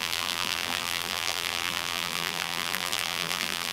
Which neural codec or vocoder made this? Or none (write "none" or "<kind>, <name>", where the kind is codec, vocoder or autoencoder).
vocoder, BigVGAN v2